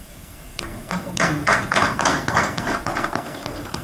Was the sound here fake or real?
fake